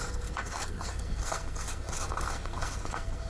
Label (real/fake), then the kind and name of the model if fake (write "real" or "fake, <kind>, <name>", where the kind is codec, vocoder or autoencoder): fake, codec, SNAC